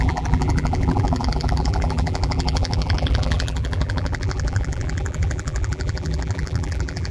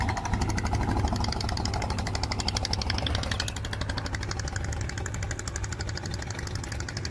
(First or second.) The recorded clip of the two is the second